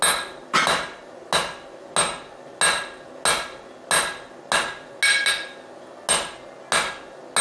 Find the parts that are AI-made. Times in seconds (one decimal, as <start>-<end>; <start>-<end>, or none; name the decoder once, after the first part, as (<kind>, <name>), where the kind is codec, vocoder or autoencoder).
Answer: none